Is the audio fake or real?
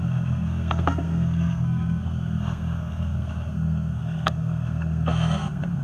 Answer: fake